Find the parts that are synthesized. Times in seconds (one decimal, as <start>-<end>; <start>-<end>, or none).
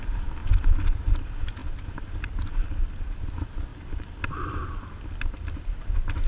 none